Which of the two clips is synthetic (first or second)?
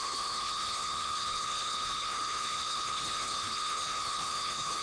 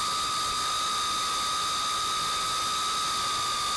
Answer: first